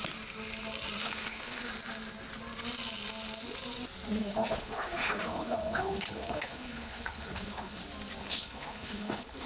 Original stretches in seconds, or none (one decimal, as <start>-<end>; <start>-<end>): 0.0-1.0; 1.7-4.2; 7.8-8.2